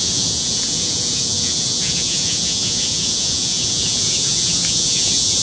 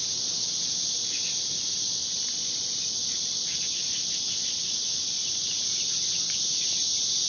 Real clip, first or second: second